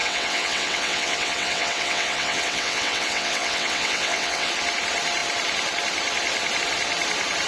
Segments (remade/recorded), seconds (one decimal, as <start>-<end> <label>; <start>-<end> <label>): 0.0-4.5 remade; 4.5-7.5 recorded